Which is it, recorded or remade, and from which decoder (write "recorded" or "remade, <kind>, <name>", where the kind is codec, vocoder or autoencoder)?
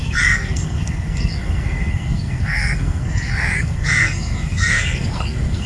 remade, codec, SNAC